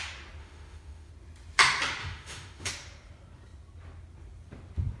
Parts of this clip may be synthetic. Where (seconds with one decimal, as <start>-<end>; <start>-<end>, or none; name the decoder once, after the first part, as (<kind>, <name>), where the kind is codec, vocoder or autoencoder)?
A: 0.4-1.1 (autoencoder, DAC-VAE); 2.0-2.7